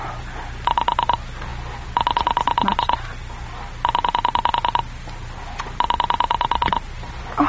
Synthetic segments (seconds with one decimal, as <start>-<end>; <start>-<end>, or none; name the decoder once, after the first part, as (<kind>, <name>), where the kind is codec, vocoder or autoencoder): none